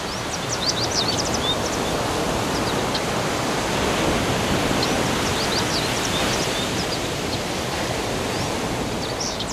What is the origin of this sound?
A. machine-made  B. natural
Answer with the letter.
B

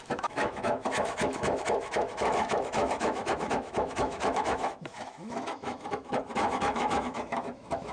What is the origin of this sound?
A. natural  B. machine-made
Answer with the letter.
B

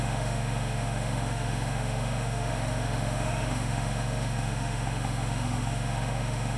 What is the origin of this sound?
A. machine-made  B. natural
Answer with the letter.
A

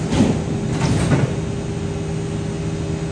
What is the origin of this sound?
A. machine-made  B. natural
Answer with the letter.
B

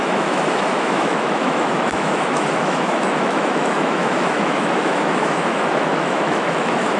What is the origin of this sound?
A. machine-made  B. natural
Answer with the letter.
A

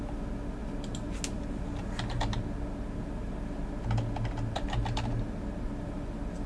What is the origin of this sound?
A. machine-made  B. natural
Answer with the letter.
B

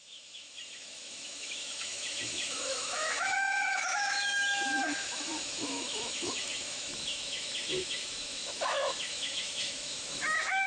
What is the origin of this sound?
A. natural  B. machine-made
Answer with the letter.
B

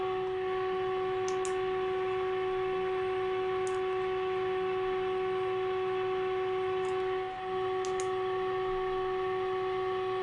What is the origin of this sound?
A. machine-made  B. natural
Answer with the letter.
B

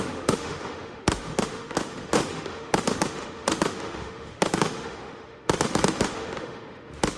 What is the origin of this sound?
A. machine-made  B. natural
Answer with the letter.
A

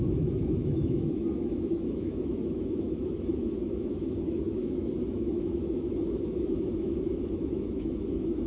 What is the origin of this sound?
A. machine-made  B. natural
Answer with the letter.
A